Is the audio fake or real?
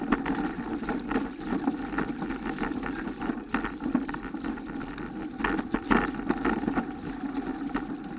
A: real